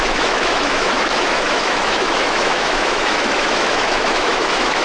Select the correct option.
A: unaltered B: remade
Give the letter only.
B